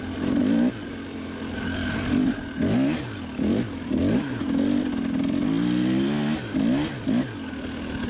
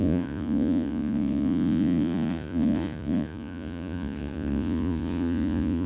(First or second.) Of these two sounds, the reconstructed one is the second